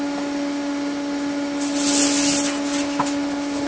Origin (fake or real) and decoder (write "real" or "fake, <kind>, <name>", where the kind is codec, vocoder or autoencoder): real